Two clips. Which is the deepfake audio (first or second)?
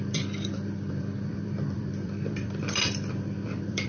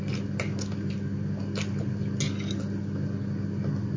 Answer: first